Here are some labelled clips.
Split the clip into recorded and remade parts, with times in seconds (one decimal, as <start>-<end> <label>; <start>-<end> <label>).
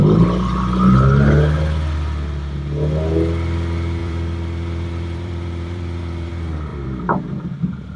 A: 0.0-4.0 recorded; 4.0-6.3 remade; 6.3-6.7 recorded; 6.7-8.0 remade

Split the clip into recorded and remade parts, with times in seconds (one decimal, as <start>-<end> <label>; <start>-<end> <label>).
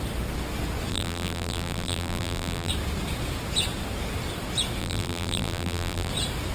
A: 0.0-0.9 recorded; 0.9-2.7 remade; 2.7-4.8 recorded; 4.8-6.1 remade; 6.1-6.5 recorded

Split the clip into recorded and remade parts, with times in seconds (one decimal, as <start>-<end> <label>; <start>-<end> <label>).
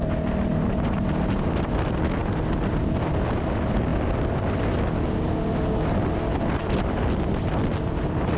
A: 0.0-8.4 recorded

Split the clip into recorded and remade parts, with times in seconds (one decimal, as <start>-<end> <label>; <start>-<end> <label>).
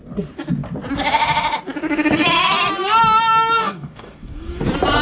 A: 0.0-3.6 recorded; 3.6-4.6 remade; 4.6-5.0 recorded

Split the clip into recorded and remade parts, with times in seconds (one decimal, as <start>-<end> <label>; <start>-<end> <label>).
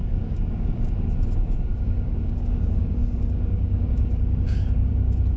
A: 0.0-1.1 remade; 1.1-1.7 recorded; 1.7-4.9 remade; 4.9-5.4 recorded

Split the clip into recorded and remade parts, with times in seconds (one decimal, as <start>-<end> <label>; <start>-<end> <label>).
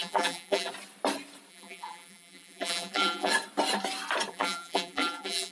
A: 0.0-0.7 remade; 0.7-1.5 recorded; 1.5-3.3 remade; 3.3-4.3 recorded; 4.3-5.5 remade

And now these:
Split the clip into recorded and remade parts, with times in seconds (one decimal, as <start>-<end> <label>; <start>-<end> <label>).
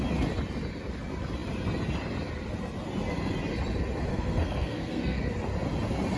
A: 0.0-4.1 recorded; 4.1-5.2 remade; 5.2-6.2 recorded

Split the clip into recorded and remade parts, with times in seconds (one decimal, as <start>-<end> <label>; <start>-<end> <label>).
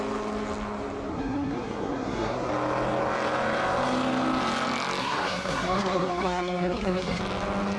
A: 0.0-1.1 recorded; 1.1-2.5 remade; 2.5-5.0 recorded; 5.0-7.2 remade; 7.2-7.8 recorded